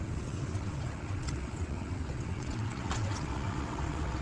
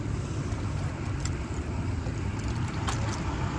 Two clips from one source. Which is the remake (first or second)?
first